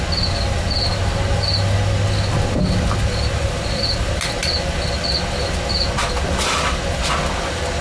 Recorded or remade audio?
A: recorded